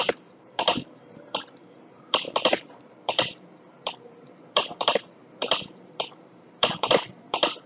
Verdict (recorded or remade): remade